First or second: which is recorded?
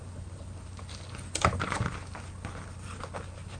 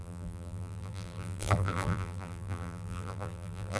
first